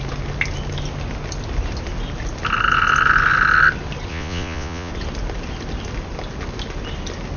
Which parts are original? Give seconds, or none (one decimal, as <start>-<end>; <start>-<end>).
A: 0.0-4.1; 4.9-7.4